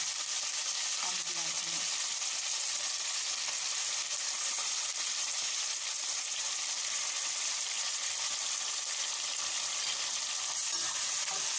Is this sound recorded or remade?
recorded